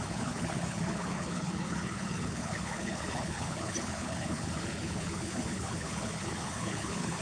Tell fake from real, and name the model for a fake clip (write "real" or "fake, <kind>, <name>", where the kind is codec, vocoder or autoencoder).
fake, codec, HILCodec